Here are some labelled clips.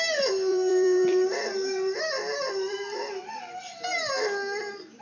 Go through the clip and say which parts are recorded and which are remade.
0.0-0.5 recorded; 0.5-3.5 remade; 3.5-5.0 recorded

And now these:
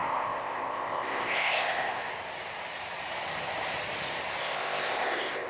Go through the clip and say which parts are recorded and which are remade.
0.0-2.1 remade; 2.1-4.4 recorded; 4.4-5.5 remade

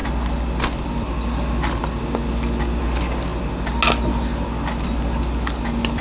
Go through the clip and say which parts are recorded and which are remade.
0.0-6.0 recorded

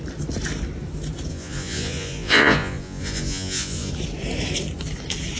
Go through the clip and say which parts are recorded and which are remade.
0.0-1.3 recorded; 1.3-3.9 remade; 3.9-5.4 recorded

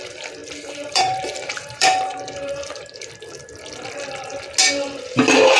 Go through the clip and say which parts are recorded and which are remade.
0.0-0.4 recorded; 0.4-3.1 remade; 3.1-5.6 recorded